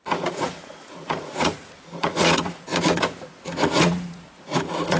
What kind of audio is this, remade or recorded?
remade